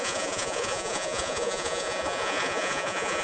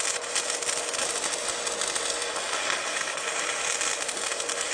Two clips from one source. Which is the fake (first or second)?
first